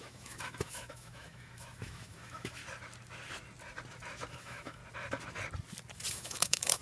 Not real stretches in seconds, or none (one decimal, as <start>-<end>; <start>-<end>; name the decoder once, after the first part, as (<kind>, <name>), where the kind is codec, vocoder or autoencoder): 0.0-2.6 (autoencoder, DAC-VAE); 4.3-4.8; 6.1-6.8